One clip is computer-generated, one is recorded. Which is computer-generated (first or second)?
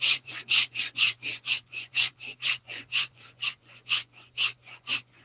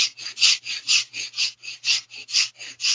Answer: first